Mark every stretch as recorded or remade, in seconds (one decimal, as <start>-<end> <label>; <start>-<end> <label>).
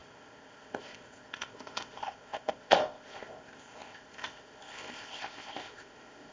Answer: 0.0-6.3 remade